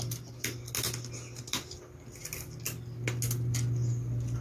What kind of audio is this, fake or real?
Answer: real